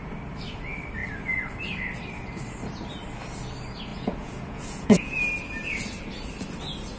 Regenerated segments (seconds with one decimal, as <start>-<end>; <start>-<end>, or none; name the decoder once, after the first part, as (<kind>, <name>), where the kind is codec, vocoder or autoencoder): 3.9-5.2 (vocoder, Vocos)

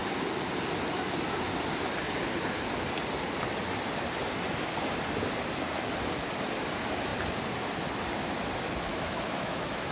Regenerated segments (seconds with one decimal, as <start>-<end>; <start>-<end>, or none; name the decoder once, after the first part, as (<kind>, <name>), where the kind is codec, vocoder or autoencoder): 8.9-9.9 (autoencoder, DAC-VAE)

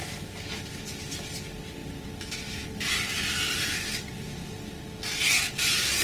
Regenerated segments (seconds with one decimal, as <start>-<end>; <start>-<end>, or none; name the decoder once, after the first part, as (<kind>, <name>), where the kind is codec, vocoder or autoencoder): none

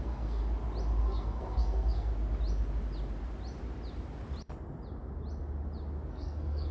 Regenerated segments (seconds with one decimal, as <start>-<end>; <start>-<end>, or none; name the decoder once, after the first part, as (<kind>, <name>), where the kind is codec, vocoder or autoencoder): 0.0-0.4 (codec, SNAC); 1.0-2.1; 6.1-6.7

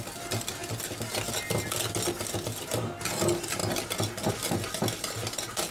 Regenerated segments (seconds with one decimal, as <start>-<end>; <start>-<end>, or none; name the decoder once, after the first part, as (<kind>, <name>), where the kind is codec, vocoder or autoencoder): none

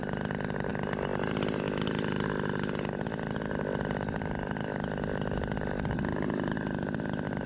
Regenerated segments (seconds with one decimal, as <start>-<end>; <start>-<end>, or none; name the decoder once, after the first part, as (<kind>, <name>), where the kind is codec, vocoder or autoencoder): none